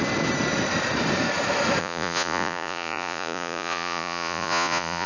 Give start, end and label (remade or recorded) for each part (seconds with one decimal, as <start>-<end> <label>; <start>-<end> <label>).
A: 0.0-1.8 recorded; 1.8-5.1 remade